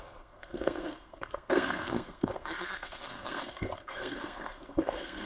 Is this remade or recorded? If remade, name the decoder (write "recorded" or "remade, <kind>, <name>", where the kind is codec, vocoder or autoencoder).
remade, codec, SNAC